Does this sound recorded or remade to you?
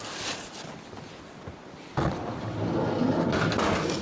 recorded